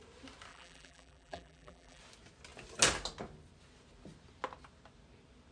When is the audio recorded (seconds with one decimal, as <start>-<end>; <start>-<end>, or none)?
0.0-0.5; 2.0-5.5